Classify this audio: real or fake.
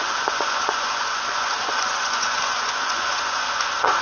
fake